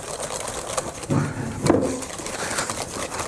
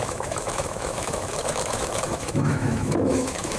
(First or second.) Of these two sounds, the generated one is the second